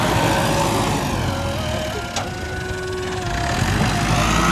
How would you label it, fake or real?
real